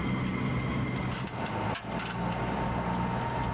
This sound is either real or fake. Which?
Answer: real